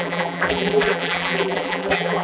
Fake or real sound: fake